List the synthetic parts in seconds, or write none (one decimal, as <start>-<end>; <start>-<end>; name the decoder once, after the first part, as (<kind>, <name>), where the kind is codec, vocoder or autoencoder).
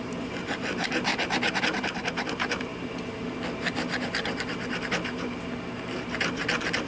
0.0-1.1 (vocoder, BigVGAN v2); 1.6-2.7; 6.2-6.9